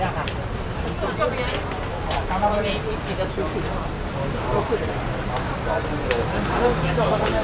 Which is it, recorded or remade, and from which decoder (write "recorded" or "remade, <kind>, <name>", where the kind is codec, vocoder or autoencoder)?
recorded